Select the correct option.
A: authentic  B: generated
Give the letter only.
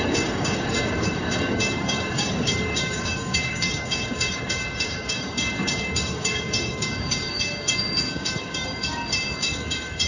B